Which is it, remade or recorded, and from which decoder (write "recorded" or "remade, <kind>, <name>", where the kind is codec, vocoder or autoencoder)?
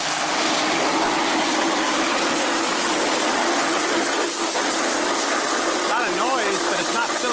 recorded